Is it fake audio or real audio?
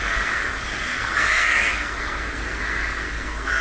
fake